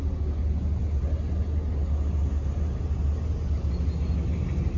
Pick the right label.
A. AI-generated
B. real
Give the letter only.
B